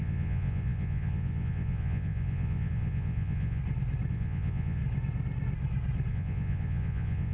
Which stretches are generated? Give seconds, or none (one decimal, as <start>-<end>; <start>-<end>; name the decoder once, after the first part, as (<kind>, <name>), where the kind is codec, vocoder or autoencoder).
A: 0.0-3.6 (vocoder, Vocos); 4.1-4.8; 6.1-7.3